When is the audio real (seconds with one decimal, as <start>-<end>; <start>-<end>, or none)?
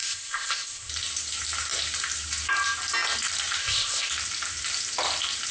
0.9-3.6; 4.1-5.5